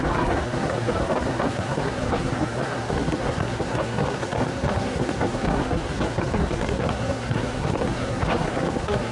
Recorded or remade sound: remade